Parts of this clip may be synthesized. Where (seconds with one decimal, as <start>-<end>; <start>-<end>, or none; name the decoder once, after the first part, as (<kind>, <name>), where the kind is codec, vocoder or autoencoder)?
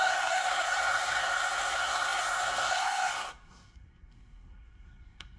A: 0.0-5.4 (codec, SNAC)